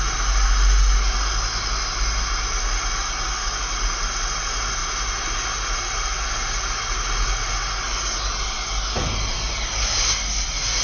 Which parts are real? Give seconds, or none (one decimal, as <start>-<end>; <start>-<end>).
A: 0.0-10.8